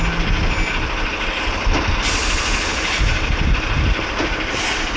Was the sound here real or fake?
real